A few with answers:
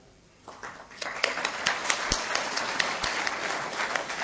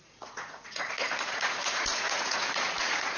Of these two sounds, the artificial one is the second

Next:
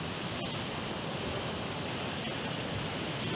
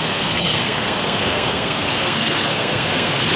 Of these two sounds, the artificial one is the second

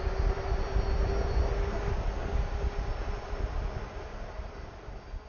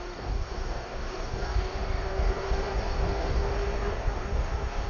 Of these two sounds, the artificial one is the second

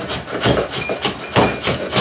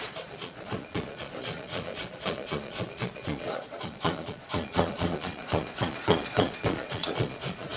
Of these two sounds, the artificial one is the second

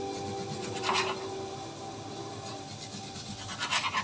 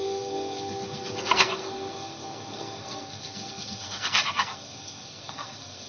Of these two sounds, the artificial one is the second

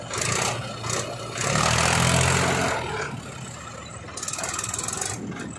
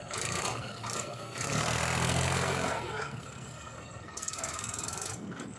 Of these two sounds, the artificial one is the second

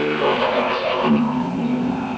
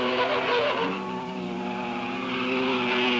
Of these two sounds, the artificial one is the first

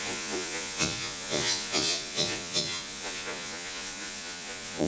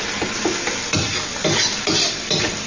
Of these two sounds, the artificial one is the first